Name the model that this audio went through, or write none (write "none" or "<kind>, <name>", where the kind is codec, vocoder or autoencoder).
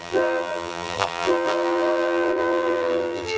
vocoder, BigVGAN v2